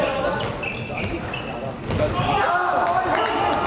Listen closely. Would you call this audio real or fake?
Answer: real